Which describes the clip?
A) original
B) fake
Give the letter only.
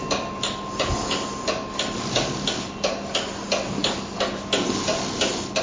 A